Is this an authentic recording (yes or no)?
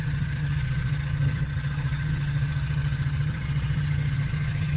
no